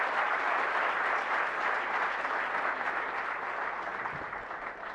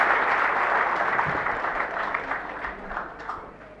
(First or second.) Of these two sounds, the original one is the first